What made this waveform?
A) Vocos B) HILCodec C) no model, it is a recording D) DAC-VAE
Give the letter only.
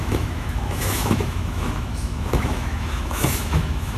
D